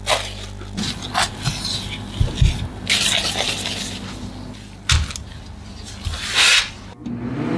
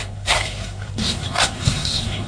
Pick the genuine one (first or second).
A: first